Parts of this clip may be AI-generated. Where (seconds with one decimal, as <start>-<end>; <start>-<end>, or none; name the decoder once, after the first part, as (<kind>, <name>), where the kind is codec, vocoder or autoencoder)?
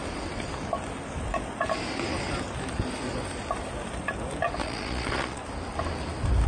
4.6-5.4 (vocoder, Vocos)